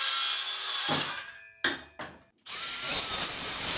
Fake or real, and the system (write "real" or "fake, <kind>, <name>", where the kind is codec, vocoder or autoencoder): real